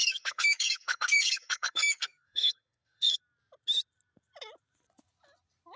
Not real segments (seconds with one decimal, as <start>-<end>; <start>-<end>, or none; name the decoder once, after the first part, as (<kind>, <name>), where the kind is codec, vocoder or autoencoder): 0.0-3.2 (codec, SNAC)